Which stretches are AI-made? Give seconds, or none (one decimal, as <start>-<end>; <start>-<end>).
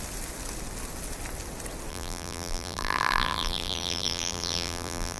1.9-5.2